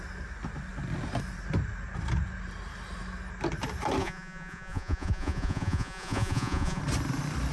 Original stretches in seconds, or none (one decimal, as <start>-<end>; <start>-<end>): 0.0-4.0; 6.8-7.5

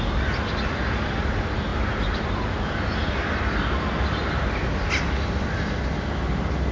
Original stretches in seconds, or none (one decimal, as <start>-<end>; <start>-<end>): 1.7-4.7